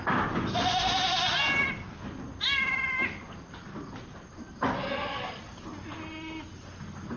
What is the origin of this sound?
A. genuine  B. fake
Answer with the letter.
A